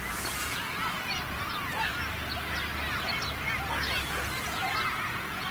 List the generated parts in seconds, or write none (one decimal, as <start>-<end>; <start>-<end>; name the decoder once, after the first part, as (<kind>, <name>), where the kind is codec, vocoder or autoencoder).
0.0-1.9 (vocoder, Vocos); 4.4-5.5